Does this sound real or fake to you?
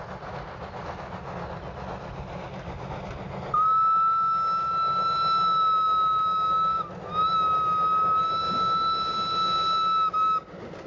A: real